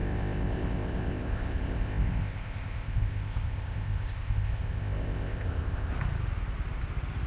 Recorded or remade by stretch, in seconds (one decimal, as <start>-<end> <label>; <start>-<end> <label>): 0.0-5.9 remade; 5.9-7.3 recorded